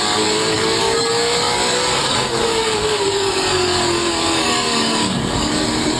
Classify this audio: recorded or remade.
remade